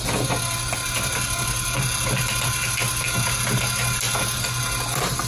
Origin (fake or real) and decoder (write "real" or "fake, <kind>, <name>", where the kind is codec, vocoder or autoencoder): real